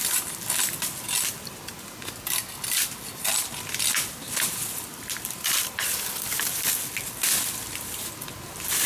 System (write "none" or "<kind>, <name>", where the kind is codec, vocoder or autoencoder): none